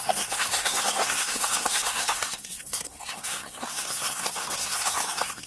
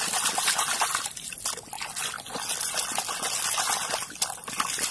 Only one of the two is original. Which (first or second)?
second